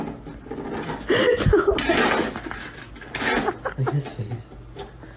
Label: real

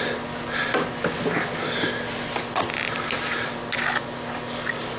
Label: real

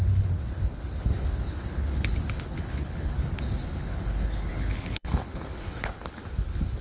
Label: fake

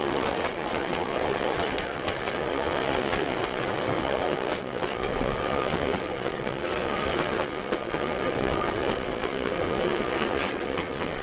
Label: fake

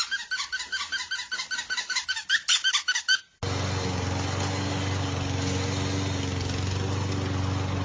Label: real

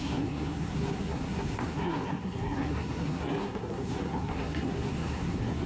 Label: fake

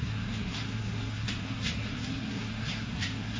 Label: fake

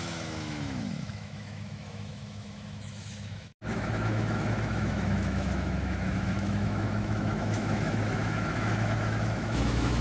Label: fake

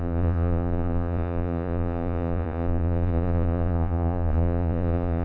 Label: fake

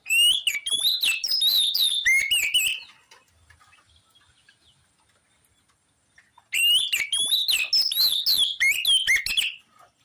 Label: real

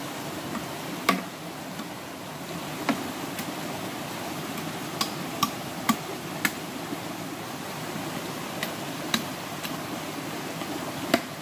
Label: real